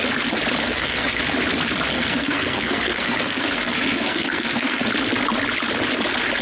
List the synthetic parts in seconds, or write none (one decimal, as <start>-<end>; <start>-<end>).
0.6-1.2; 1.9-4.9